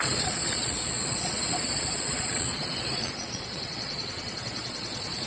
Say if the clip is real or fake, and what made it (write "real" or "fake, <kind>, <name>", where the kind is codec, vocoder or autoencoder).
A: fake, vocoder, Vocos